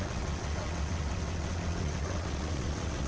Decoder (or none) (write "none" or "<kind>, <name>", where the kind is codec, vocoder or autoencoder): vocoder, WaveNeXt